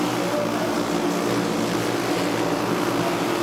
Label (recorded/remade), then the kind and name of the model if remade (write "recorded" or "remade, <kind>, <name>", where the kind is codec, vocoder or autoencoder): recorded